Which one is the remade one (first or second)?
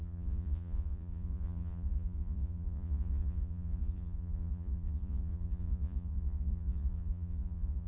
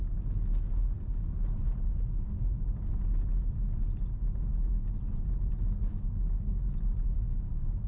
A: first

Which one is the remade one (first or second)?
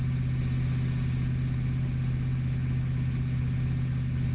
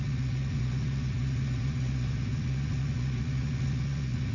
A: second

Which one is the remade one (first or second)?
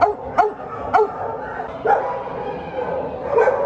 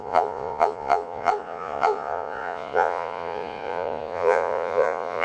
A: second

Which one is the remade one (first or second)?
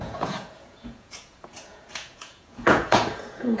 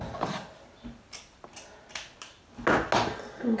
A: first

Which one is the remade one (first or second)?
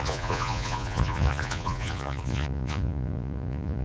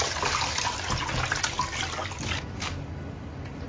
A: first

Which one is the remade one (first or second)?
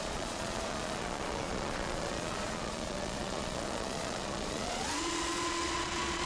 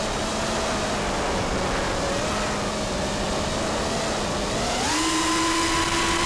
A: first